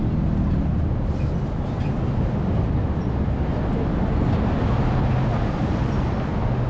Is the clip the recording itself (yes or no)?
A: yes